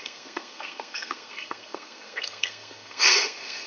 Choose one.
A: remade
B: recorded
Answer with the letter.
A